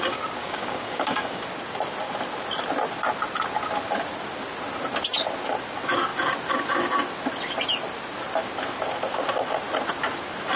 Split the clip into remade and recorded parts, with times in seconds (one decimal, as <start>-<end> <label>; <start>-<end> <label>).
0.0-0.4 recorded; 0.4-1.4 remade; 1.4-10.6 recorded